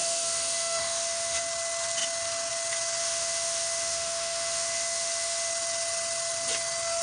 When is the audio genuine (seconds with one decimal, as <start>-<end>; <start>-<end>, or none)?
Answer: 1.4-3.0; 5.5-7.0